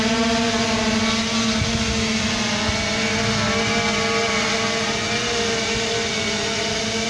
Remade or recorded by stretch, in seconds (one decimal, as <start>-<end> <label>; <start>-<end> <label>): 0.0-7.1 recorded